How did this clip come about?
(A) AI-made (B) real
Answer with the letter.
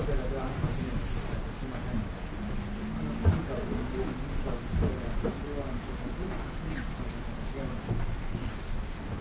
B